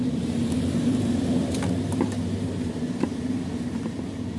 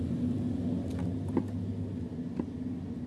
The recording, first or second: second